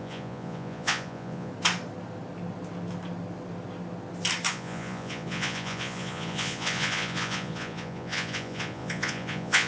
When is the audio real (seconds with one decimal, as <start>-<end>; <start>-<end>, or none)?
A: 1.5-4.5